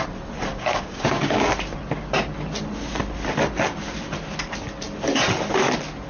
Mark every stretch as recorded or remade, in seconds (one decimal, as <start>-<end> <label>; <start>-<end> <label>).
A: 0.0-0.5 recorded; 0.5-1.5 remade; 1.5-6.1 recorded